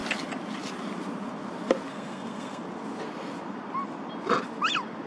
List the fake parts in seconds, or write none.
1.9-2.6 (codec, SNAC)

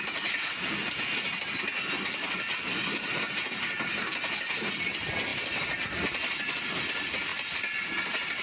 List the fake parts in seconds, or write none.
none

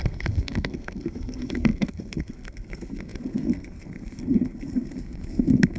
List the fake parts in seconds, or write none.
0.0-5.8 (codec, SNAC)

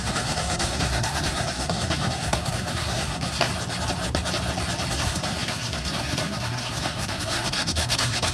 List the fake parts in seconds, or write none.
0.0-3.5 (codec, SNAC); 4.9-8.3

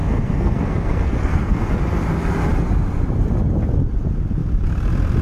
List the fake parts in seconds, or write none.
0.0-1.7 (codec, SNAC)

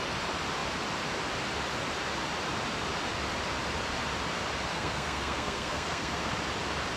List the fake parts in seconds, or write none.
4.7-6.3 (codec, SNAC)